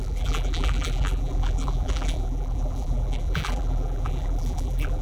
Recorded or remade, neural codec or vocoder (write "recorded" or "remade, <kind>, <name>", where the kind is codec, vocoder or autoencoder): remade, vocoder, BigVGAN v2